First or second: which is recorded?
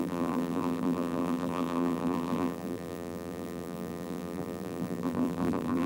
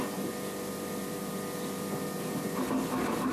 second